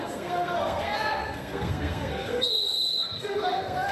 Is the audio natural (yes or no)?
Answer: no